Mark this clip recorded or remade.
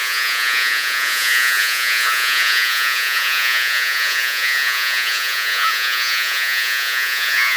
remade